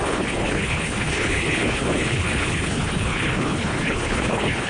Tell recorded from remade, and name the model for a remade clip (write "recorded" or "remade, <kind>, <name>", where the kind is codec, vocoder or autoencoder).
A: remade, codec, HILCodec